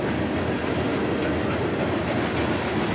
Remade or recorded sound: recorded